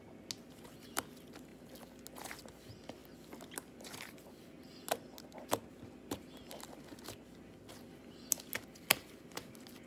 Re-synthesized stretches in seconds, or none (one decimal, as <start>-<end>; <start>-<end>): none